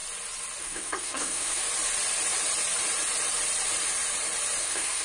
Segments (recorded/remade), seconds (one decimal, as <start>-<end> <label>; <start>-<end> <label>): 0.0-0.6 recorded; 0.6-1.6 remade; 1.6-4.6 recorded; 4.6-5.0 remade